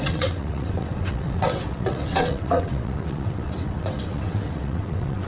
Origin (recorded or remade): remade